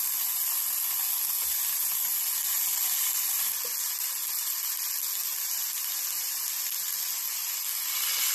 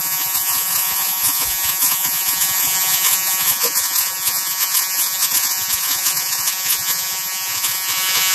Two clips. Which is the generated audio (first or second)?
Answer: second